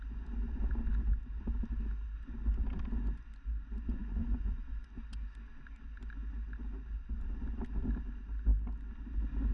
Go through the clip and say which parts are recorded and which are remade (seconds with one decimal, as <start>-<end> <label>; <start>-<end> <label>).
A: 0.0-4.0 recorded; 4.0-4.9 remade; 4.9-9.5 recorded